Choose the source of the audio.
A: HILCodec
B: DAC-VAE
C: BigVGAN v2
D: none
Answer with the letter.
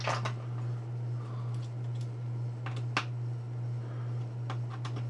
D